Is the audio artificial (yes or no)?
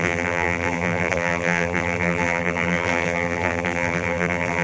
yes